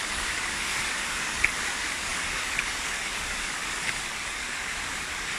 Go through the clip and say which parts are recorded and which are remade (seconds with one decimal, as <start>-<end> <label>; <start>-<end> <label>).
0.0-5.4 remade